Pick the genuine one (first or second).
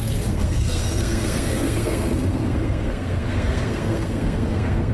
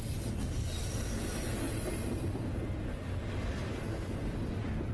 second